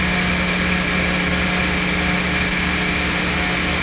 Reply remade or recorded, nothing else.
recorded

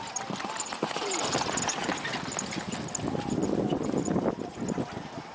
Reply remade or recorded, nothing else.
recorded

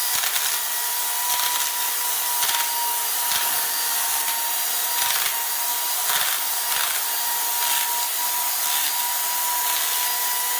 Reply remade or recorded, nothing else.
recorded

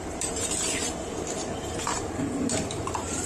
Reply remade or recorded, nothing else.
remade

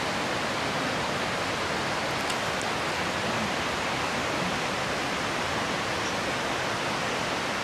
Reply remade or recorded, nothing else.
recorded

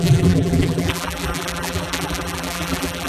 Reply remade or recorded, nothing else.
remade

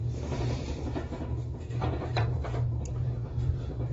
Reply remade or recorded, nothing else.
remade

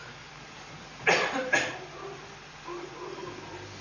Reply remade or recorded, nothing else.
remade